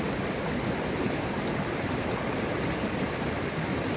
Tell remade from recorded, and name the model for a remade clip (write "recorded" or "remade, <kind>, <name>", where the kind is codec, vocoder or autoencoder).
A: remade, vocoder, BigVGAN v2